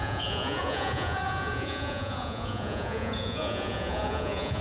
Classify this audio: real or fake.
fake